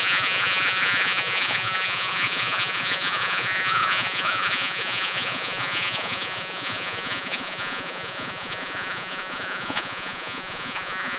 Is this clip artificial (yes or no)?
yes